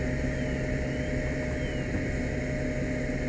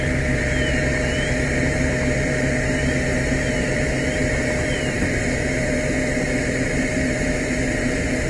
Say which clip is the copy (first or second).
second